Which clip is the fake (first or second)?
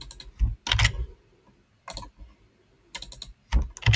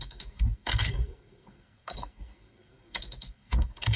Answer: second